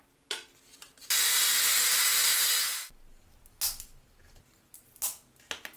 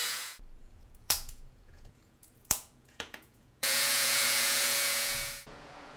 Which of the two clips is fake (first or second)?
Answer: second